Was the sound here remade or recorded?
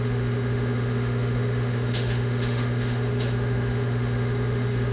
remade